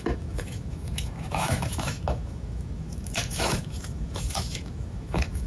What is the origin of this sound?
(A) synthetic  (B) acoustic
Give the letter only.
A